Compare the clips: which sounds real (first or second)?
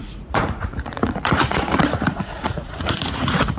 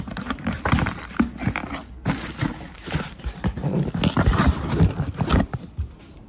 second